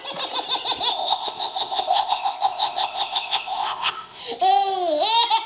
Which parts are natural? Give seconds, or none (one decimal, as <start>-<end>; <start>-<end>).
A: 0.0-0.9; 4.2-5.5